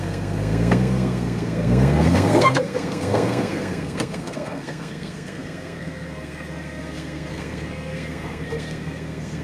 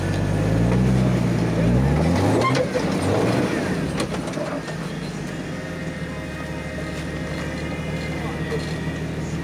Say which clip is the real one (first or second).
second